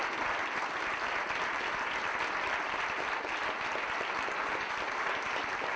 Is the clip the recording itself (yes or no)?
yes